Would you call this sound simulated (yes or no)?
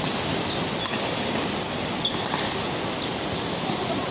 no